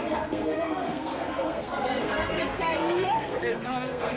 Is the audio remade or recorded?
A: remade